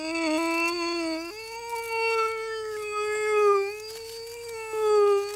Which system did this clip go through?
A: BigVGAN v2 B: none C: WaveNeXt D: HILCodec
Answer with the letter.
B